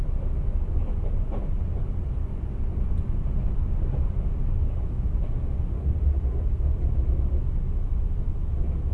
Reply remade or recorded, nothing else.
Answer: recorded